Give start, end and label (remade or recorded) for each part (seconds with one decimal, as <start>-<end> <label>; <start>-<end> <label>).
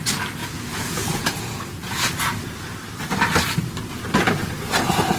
0.0-0.4 recorded; 0.4-2.4 remade; 2.4-5.2 recorded